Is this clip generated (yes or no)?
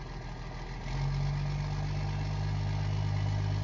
no